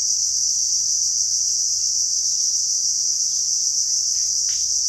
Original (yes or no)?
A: yes